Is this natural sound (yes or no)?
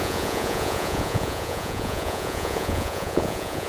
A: no